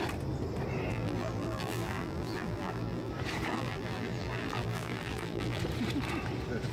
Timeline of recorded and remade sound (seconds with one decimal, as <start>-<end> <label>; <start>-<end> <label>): 0.0-0.9 recorded; 0.9-3.1 remade; 3.1-3.5 recorded; 3.5-5.6 remade; 5.6-6.7 recorded